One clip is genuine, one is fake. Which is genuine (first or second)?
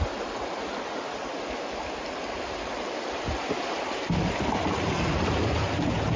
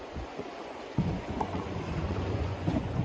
first